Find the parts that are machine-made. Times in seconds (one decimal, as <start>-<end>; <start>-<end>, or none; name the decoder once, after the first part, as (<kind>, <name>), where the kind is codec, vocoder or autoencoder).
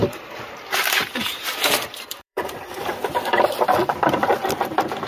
0.0-2.8 (vocoder, BigVGAN v2); 3.8-4.5